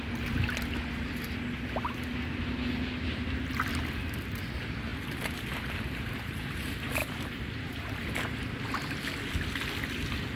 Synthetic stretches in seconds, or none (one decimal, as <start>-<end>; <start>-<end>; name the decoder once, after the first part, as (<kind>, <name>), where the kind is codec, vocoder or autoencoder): 7.0-8.0 (vocoder, BigVGAN v2)